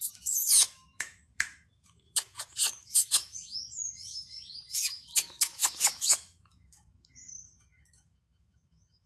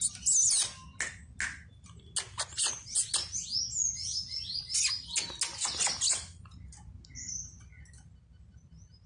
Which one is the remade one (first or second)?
first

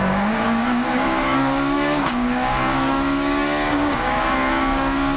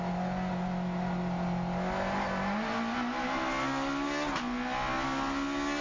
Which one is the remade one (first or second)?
first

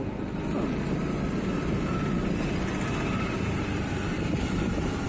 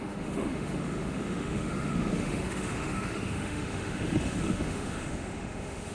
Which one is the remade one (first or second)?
second